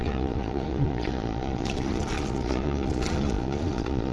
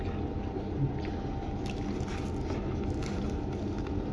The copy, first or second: first